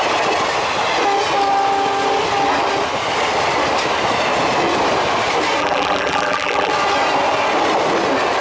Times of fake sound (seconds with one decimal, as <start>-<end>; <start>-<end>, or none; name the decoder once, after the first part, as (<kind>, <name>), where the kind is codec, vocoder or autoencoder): 5.6-6.7 (vocoder, BigVGAN v2)